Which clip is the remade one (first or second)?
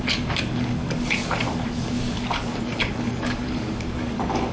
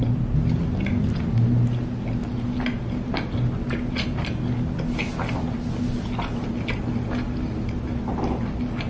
first